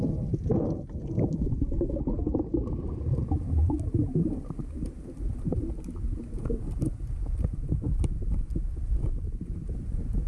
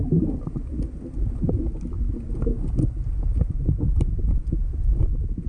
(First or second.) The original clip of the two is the second